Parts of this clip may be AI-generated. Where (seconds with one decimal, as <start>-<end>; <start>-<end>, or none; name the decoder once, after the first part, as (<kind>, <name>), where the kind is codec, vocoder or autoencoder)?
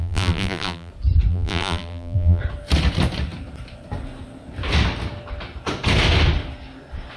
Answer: 0.0-0.9 (vocoder, BigVGAN v2); 1.3-2.4